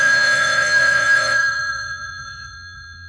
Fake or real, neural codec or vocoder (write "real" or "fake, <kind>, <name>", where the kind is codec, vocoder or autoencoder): fake, vocoder, Vocos